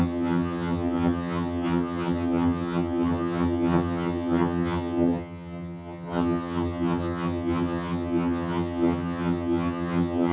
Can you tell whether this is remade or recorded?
remade